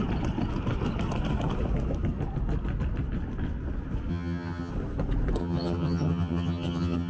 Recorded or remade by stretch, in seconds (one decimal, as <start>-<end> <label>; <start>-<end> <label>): 0.0-4.1 recorded; 4.1-4.7 remade; 4.7-5.4 recorded; 5.4-7.1 remade